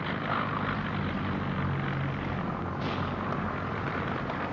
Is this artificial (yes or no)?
no